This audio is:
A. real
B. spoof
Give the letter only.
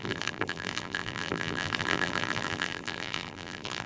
B